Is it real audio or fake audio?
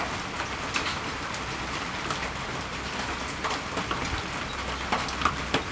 real